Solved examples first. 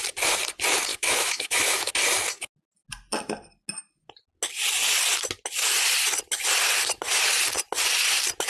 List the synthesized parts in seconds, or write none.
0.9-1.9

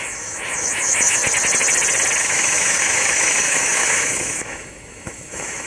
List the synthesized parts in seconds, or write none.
0.0-1.2; 2.2-5.7

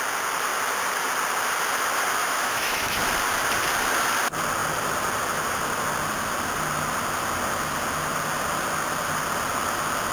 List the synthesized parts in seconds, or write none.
2.2-3.0

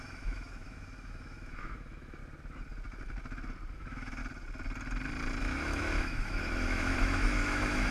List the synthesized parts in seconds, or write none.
0.0-2.2; 3.7-4.2; 5.4-7.9

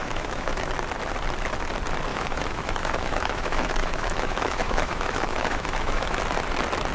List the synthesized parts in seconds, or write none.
0.0-0.7; 2.1-6.2

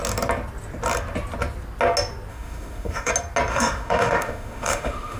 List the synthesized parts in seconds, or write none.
2.3-3.1; 3.5-5.2

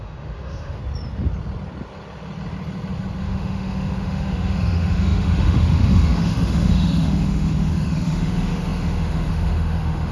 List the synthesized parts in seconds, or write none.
0.0-0.8; 3.2-10.1